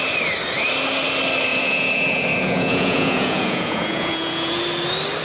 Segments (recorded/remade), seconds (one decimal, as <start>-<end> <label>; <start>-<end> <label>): 0.0-1.5 recorded; 1.5-4.6 remade; 4.6-5.2 recorded